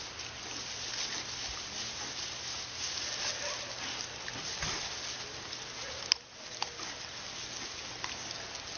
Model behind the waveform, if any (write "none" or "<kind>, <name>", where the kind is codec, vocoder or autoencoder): none